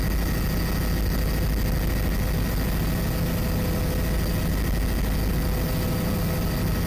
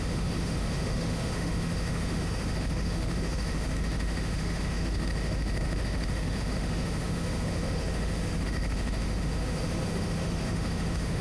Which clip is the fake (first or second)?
second